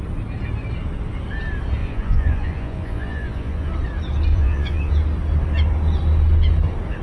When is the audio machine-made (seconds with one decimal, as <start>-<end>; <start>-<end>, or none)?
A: 1.8-3.7; 4.3-4.9